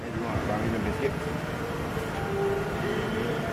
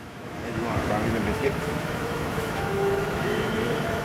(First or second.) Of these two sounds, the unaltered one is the first